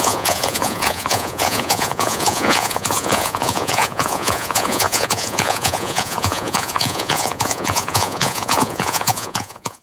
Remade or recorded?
remade